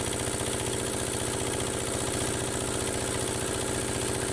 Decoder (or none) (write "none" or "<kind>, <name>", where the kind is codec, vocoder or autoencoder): none